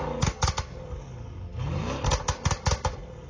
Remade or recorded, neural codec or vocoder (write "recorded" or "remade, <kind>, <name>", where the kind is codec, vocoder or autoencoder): recorded